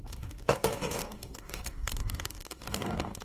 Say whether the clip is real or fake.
fake